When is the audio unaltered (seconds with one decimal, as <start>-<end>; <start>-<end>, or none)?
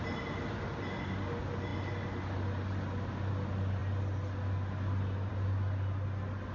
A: 0.0-6.5